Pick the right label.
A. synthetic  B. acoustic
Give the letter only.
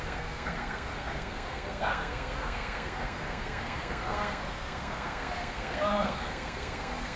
A